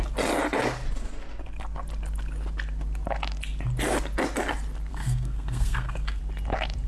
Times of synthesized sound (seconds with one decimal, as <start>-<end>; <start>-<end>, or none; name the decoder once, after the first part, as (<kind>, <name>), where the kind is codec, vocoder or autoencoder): 4.9-6.2 (codec, SNAC)